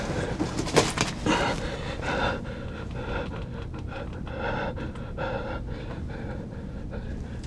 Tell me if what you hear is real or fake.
real